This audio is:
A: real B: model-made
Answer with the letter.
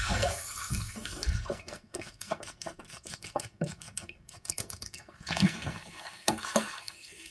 B